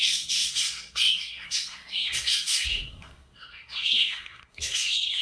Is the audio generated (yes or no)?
yes